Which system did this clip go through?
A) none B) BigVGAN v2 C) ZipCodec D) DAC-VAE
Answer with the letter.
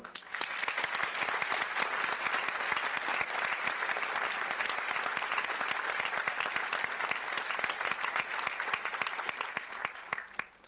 A